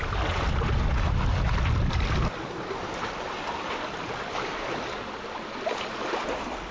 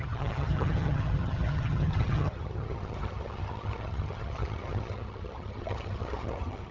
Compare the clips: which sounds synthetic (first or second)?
second